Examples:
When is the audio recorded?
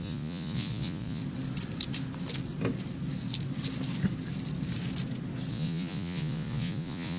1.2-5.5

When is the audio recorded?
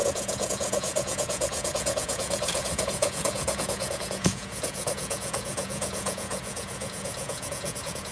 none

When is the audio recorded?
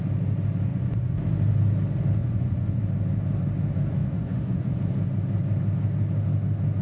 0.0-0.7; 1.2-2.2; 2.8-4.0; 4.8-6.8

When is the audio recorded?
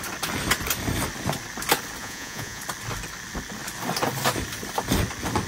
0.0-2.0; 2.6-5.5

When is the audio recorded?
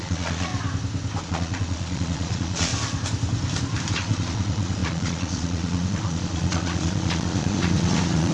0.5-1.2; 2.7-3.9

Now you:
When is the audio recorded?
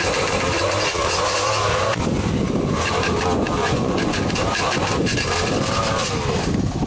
0.0-3.6; 4.2-6.9